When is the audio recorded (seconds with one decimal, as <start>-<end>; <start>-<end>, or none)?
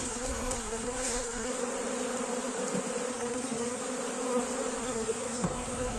1.5-3.1; 3.8-4.8